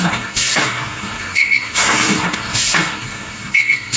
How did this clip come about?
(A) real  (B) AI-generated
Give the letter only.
B